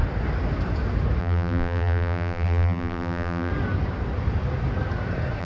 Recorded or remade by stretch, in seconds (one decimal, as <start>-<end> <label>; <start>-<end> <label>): 0.0-1.2 recorded; 1.2-3.5 remade; 3.5-5.4 recorded